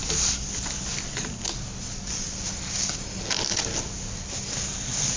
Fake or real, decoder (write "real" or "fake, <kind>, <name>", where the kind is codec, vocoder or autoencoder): real